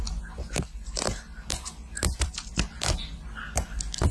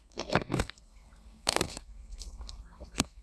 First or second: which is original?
first